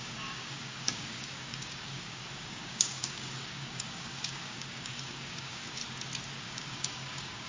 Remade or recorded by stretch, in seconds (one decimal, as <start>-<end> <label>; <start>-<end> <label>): 0.0-5.8 remade; 5.8-6.4 recorded; 6.4-7.5 remade